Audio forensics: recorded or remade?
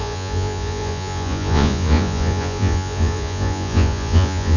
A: remade